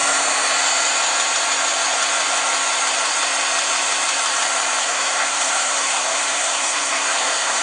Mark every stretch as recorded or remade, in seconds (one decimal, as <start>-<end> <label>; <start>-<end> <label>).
0.0-4.8 recorded; 4.8-7.6 remade